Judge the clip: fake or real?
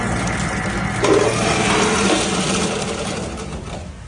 real